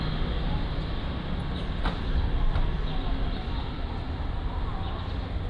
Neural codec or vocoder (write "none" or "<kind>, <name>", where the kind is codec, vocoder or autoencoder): none